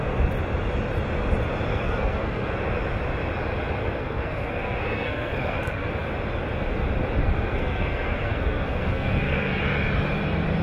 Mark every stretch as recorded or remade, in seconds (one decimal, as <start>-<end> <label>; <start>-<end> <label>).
0.0-1.7 recorded; 1.7-2.5 remade; 2.5-3.8 recorded; 3.8-5.9 remade; 5.9-7.2 recorded; 7.2-9.6 remade; 9.6-10.6 recorded